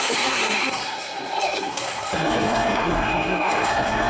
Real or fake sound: fake